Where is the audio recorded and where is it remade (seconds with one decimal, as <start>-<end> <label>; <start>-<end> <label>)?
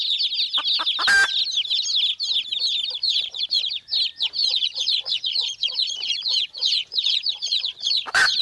0.0-3.0 recorded; 3.0-3.6 remade; 3.6-4.4 recorded; 4.4-8.4 remade